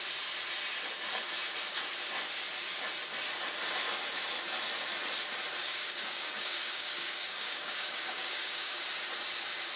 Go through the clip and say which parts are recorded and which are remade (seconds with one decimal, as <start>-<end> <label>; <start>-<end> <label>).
0.0-5.6 recorded; 5.6-8.8 remade; 8.8-9.8 recorded